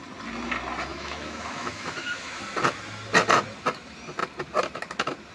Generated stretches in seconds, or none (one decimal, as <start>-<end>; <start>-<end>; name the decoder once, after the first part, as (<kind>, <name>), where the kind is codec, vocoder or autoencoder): 0.9-2.4 (autoencoder, DAC-VAE)